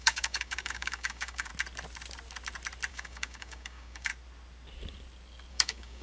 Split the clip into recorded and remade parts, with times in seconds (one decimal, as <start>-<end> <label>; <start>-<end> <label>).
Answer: 0.0-1.5 remade; 1.5-2.9 recorded; 2.9-4.1 remade; 4.1-5.5 recorded; 5.5-6.0 remade